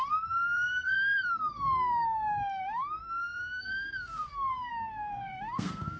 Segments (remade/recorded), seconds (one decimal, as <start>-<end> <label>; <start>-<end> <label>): 0.0-6.0 remade